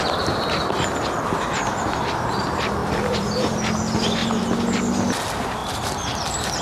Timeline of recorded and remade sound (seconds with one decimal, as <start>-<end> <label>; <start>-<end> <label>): 0.0-2.8 recorded; 2.8-3.5 remade; 3.5-5.6 recorded; 5.6-6.6 remade